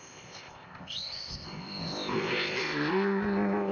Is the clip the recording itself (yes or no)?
no